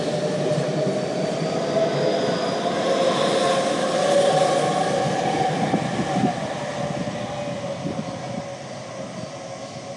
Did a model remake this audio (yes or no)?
no